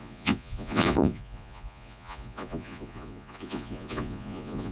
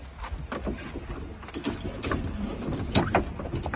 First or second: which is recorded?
second